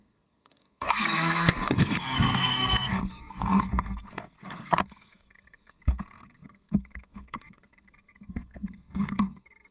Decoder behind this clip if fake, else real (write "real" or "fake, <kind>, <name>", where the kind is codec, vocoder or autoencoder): fake, codec, SNAC